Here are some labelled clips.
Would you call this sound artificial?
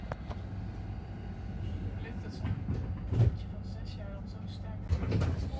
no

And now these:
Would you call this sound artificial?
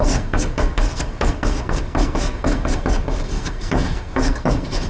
yes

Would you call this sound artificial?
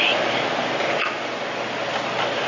no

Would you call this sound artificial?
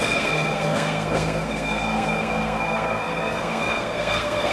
yes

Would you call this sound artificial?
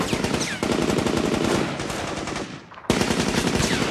no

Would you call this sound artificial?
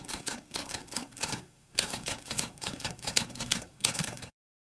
yes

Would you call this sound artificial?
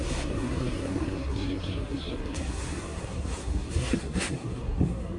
yes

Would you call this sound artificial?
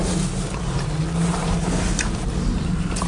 no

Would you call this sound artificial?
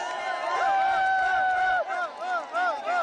no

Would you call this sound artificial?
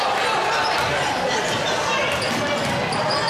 no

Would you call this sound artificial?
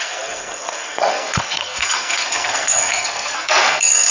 yes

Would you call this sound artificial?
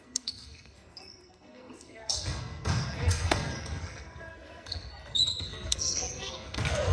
yes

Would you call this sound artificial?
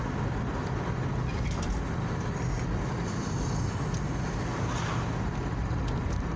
no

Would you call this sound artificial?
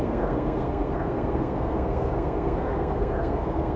yes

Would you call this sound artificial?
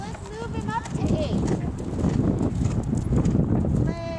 no